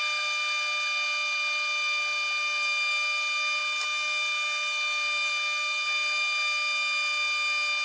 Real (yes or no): yes